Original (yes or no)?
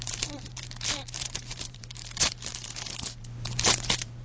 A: no